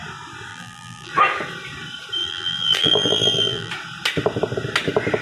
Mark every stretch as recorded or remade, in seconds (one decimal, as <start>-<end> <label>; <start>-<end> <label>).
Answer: 0.0-0.5 recorded; 0.5-1.1 remade; 1.1-2.2 recorded; 2.2-3.7 remade; 3.7-5.2 recorded